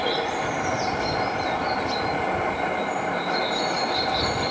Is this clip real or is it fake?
real